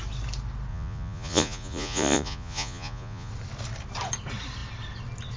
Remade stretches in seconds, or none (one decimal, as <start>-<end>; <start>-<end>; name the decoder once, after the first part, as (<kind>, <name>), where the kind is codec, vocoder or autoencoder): 0.7-3.3 (vocoder, Vocos)